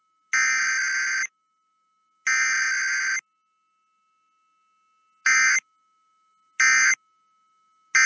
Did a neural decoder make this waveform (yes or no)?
no